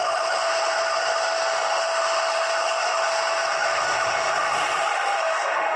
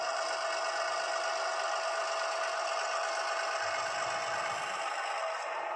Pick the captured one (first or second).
second